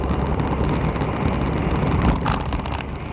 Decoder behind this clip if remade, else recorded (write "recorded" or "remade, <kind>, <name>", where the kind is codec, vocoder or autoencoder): recorded